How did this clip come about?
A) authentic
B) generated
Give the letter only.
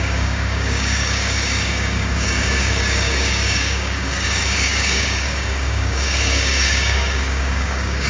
B